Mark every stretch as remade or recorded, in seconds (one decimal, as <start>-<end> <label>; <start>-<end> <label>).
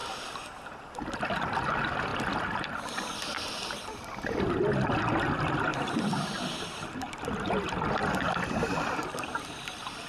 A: 0.0-2.1 recorded; 2.1-4.4 remade; 4.4-5.7 recorded; 5.7-8.1 remade; 8.1-10.1 recorded